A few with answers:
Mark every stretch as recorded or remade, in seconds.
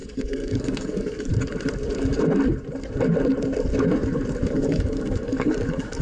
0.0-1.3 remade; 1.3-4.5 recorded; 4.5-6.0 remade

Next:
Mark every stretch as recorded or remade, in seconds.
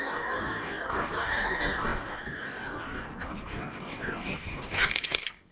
0.0-5.5 remade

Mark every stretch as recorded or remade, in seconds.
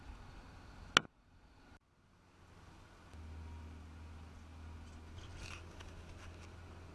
0.0-6.9 recorded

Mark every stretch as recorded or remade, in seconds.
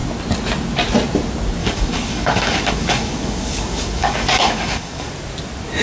0.0-1.6 recorded; 1.6-5.1 remade; 5.1-5.8 recorded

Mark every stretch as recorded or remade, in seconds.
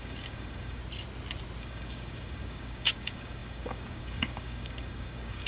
0.0-0.8 remade; 0.8-1.6 recorded; 1.6-5.5 remade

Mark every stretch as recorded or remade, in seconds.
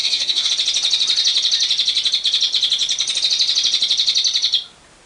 0.0-0.5 remade; 0.5-5.1 recorded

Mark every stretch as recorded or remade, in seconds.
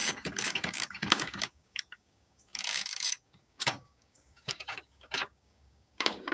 0.0-6.3 remade